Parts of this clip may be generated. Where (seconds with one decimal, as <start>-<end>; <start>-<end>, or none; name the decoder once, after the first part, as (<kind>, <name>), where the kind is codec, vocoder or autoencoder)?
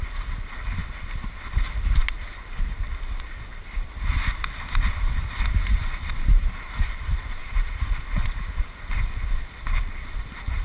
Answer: 6.3-7.0 (vocoder, BigVGAN v2); 7.4-8.0